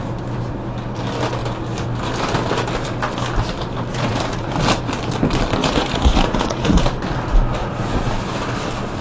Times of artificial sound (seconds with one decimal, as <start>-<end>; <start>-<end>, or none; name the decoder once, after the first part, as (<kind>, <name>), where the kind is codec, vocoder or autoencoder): 3.9-4.5 (vocoder, Vocos); 5.6-6.8; 7.6-8.2